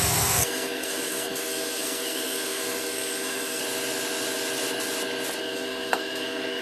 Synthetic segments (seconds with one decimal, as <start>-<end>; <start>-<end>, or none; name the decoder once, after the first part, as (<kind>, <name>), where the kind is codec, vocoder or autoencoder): 0.0-3.6 (codec, SNAC); 5.4-6.6